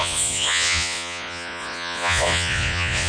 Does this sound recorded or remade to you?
remade